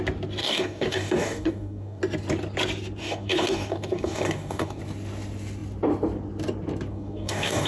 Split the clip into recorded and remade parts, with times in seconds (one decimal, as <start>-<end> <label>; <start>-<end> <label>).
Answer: 0.0-0.4 recorded; 0.4-2.0 remade; 2.0-3.0 recorded; 3.0-4.8 remade; 4.8-6.9 recorded; 6.9-7.7 remade